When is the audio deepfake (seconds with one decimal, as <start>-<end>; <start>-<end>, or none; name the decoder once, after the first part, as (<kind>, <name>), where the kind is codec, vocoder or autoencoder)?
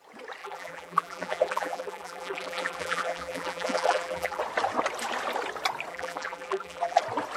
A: 0.4-4.4 (vocoder, BigVGAN v2); 5.9-7.0